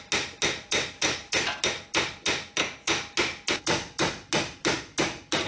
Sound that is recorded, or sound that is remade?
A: recorded